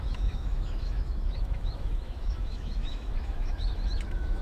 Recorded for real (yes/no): no